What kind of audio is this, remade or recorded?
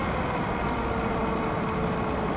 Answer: recorded